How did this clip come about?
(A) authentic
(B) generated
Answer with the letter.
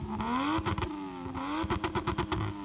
A